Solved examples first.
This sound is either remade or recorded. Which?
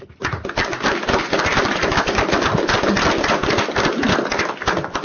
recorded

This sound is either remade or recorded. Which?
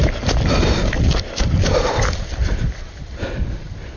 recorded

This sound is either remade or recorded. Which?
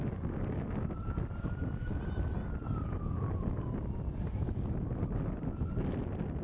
recorded